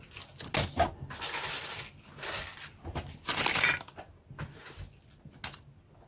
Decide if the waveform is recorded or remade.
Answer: recorded